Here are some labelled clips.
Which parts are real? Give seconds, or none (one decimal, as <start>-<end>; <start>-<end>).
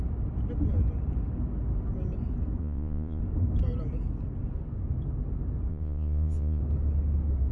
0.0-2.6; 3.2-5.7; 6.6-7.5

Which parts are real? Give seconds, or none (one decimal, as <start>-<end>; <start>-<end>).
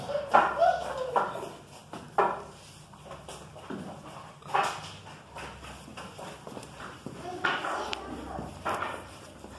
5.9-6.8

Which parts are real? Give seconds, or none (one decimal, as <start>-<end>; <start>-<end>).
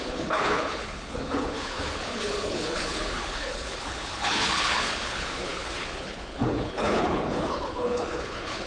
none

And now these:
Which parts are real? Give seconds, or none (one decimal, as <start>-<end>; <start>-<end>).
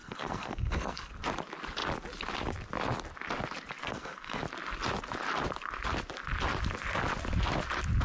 1.1-3.8; 4.4-8.0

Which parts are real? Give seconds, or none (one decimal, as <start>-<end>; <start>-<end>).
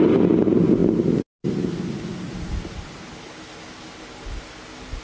0.0-5.0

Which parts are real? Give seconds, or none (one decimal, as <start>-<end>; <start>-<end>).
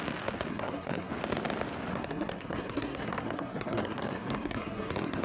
0.0-0.5; 1.1-1.9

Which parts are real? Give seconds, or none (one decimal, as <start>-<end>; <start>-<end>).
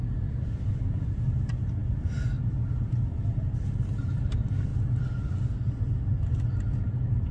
0.0-7.3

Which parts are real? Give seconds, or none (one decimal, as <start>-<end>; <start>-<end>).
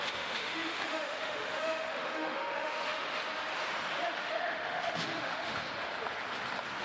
3.2-4.1; 5.7-6.8